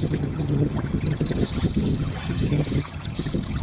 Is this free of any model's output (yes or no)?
no